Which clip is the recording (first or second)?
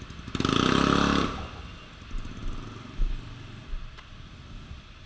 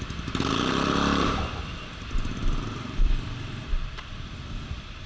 first